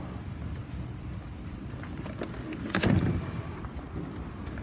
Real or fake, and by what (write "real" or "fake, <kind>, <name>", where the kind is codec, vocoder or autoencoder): real